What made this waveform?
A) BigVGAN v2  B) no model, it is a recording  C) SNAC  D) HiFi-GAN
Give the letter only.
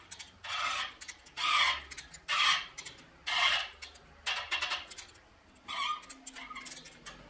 B